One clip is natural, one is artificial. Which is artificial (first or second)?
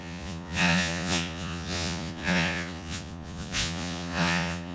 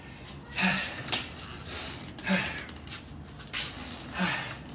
first